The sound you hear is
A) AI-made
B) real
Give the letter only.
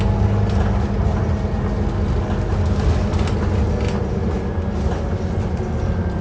B